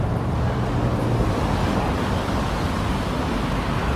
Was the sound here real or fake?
real